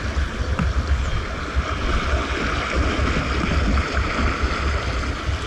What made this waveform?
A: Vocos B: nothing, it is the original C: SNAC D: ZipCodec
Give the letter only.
B